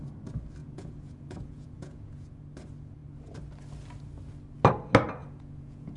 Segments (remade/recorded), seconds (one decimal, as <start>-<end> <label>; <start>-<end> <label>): 0.0-0.6 recorded; 0.6-2.4 remade; 2.4-5.2 recorded; 5.2-6.0 remade